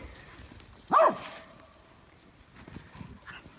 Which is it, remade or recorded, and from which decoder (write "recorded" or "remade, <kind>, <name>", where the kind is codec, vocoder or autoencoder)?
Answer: recorded